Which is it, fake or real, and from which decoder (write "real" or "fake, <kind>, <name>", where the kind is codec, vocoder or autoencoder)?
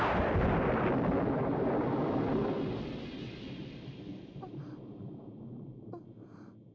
real